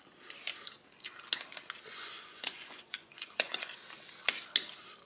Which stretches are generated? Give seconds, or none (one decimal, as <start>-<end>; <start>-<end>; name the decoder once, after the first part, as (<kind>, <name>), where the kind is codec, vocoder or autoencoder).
1.9-3.7 (vocoder, Vocos)